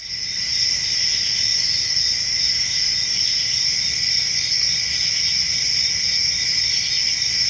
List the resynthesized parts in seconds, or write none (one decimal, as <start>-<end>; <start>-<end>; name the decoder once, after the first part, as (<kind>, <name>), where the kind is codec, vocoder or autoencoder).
none